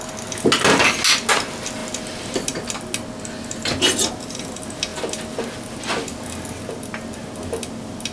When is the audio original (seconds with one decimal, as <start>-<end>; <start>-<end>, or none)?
0.0-8.1